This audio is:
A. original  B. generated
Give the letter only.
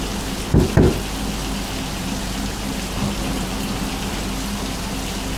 A